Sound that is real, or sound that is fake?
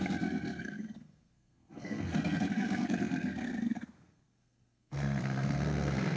fake